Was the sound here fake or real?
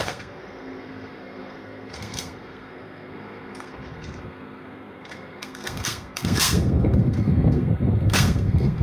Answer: fake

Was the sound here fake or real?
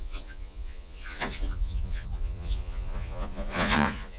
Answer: fake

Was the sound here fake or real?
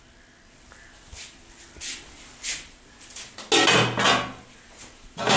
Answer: real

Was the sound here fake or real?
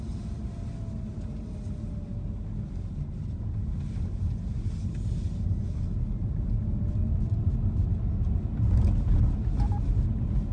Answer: real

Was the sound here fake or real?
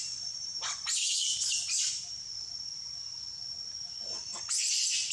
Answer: fake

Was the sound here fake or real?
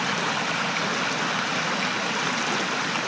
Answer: real